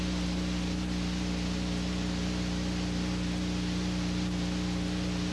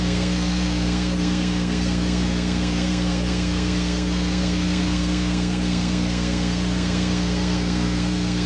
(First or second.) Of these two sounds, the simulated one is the second